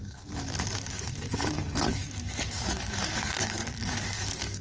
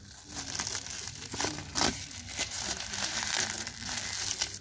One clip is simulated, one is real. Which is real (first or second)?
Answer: second